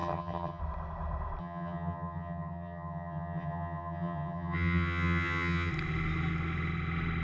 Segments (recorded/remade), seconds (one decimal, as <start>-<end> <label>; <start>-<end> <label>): 0.0-0.6 remade; 0.6-1.4 recorded; 1.4-5.7 remade; 5.7-7.2 recorded